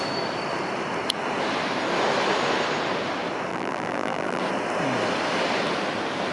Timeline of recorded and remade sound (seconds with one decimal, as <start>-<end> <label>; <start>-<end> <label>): 0.0-3.5 recorded; 3.5-4.4 remade; 4.4-6.3 recorded